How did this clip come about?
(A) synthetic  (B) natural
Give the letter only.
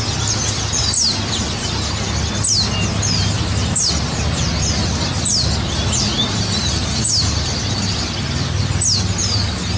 B